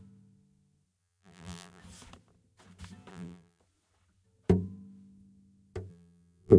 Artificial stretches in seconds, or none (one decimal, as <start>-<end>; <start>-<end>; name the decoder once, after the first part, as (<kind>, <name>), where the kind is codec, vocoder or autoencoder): 1.0-1.8 (vocoder, BigVGAN v2); 3.1-3.6; 5.9-6.6